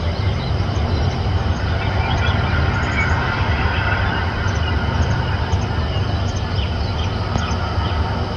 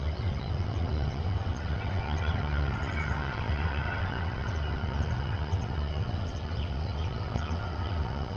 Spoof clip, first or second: second